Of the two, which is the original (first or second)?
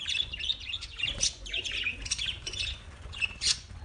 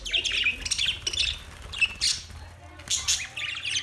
second